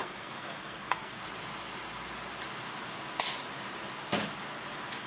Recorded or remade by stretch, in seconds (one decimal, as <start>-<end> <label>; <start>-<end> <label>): 0.0-1.2 remade; 1.2-5.1 recorded